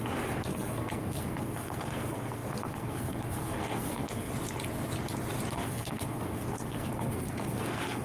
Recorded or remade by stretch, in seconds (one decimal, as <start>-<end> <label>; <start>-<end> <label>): 0.0-4.3 remade; 4.3-5.5 recorded; 5.5-8.0 remade